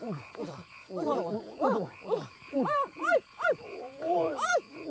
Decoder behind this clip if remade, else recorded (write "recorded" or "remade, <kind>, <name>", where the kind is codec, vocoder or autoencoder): remade, vocoder, Vocos